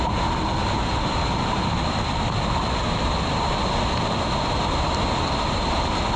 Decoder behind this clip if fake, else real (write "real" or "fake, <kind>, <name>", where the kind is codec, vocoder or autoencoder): real